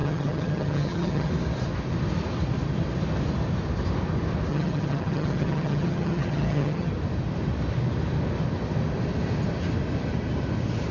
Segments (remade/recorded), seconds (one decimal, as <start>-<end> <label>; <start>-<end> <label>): 0.0-1.3 remade; 1.3-4.5 recorded; 4.5-6.9 remade; 6.9-10.9 recorded